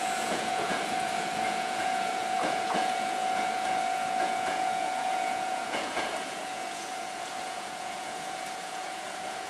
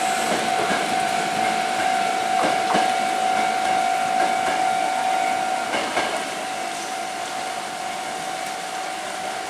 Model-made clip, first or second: first